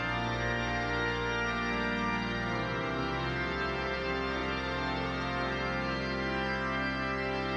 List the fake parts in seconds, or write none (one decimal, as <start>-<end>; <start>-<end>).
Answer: none